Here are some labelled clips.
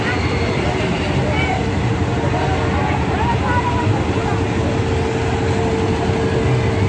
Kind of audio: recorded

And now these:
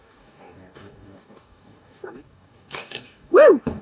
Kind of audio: remade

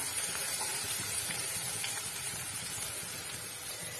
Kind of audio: remade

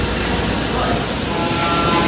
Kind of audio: recorded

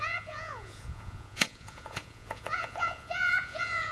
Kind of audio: remade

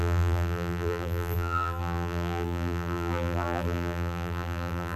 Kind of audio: remade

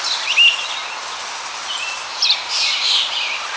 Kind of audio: recorded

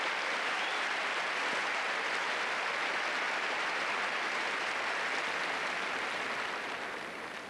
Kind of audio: recorded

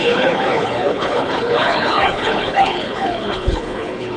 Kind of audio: remade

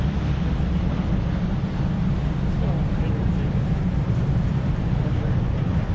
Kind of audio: remade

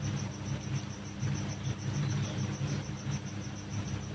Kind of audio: remade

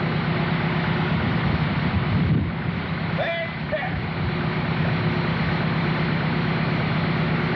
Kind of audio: recorded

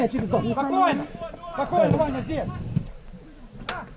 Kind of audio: recorded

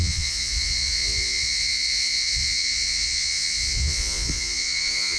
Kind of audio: remade